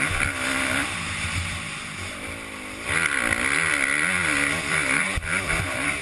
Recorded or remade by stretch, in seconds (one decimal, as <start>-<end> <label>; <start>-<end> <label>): 0.0-4.2 recorded; 4.2-6.0 remade

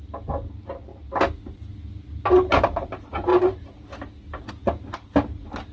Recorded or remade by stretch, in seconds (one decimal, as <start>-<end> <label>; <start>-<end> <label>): 0.0-3.3 recorded; 3.3-4.5 remade; 4.5-5.7 recorded

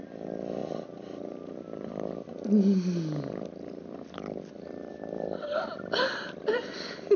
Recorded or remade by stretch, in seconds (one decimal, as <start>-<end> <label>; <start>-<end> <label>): 0.0-7.2 recorded

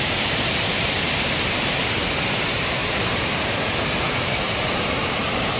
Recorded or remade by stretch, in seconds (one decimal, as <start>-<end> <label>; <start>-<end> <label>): 0.0-5.6 remade

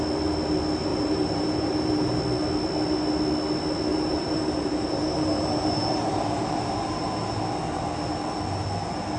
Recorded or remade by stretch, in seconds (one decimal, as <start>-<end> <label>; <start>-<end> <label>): 0.0-0.9 recorded; 0.9-2.2 remade; 2.2-3.9 recorded; 3.9-7.4 remade; 7.4-9.2 recorded